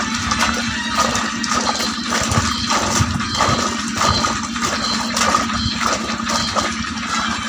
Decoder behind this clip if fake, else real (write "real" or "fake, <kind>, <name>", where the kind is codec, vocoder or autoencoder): real